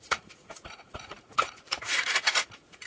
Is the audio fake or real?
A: fake